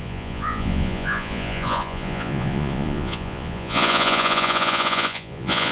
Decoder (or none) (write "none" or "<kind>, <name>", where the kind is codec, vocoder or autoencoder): vocoder, Vocos